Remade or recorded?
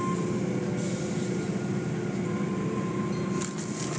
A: recorded